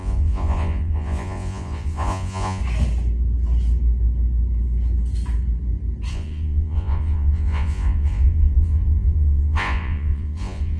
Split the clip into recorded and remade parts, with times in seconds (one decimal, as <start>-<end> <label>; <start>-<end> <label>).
0.0-2.6 remade; 2.6-6.1 recorded; 6.1-10.8 remade